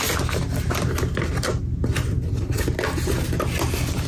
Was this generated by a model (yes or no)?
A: no